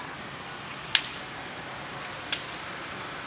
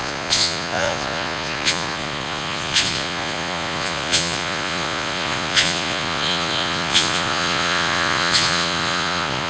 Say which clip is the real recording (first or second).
first